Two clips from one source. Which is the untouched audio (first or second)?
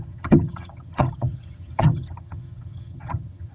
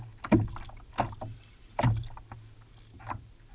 second